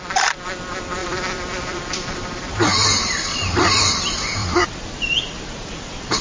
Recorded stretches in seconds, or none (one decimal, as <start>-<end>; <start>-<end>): 0.0-1.0; 3.9-4.4; 4.9-6.2